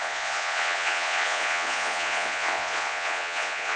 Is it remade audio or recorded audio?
remade